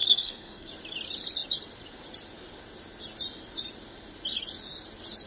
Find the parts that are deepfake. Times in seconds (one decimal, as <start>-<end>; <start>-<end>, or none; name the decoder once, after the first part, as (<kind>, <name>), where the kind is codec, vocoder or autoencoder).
0.0-0.7 (codec, SNAC)